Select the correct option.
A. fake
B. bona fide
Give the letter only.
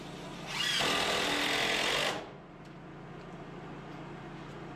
B